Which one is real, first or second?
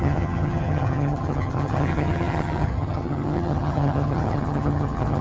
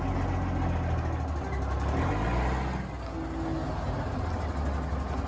second